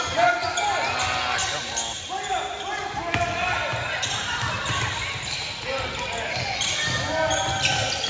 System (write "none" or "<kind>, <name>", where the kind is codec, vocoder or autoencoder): none